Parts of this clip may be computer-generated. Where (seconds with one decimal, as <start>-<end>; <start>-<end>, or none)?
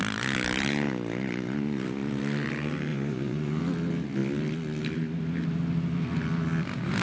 2.9-3.6